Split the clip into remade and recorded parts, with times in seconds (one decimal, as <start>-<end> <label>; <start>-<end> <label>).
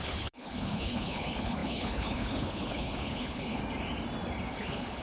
0.0-3.6 remade; 3.6-4.5 recorded; 4.5-5.0 remade